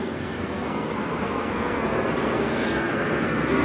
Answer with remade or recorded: remade